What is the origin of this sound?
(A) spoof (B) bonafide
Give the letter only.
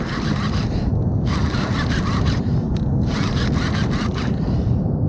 B